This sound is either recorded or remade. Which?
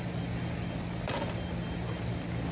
recorded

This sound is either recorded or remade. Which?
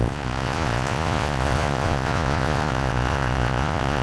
remade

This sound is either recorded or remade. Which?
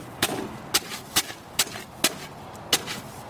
recorded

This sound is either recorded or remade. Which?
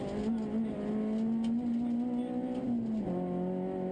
recorded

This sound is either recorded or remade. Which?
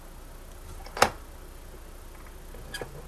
recorded